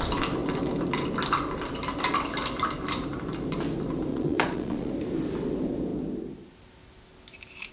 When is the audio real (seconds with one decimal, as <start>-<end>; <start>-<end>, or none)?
0.0-4.1; 4.9-7.7